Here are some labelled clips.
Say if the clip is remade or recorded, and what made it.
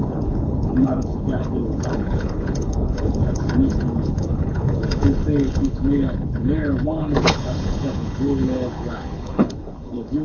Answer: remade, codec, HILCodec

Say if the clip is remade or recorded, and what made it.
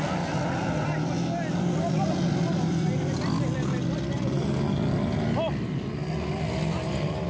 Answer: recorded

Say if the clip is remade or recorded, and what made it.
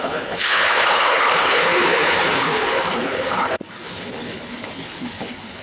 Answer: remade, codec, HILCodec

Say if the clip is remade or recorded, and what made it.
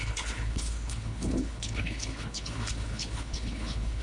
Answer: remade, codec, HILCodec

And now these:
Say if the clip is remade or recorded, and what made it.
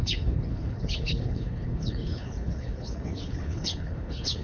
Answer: remade, codec, HILCodec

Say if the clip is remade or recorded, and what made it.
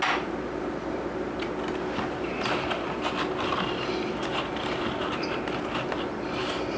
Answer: recorded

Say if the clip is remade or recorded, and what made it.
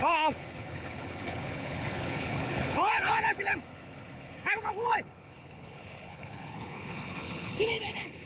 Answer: remade, codec, HILCodec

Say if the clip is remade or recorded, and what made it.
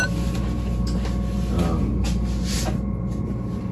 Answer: recorded